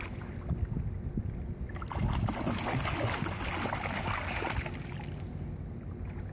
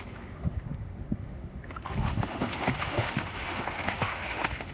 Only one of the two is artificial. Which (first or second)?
second